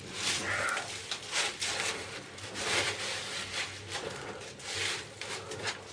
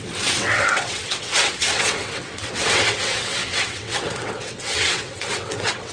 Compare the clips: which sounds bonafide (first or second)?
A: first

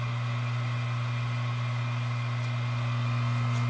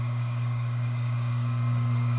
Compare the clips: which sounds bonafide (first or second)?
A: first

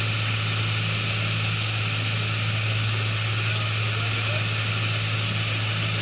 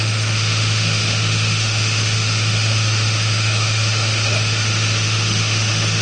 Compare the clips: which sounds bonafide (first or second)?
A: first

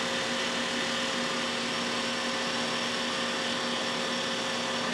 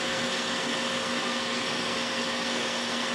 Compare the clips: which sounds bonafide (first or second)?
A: first